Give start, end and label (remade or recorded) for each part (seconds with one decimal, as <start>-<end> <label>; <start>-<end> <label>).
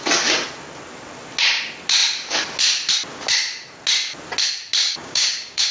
0.0-4.8 recorded; 4.8-5.7 remade